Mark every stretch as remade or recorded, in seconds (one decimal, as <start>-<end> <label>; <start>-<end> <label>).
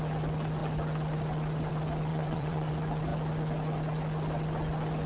0.0-2.1 recorded; 2.1-2.7 remade; 2.7-5.1 recorded